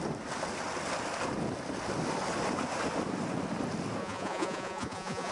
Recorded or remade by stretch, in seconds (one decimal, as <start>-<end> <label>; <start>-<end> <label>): 0.0-4.0 recorded; 4.0-5.3 remade